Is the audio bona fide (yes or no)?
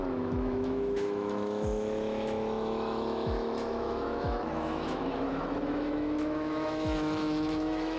no